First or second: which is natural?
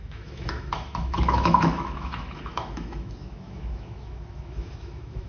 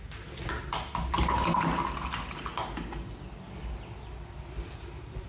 second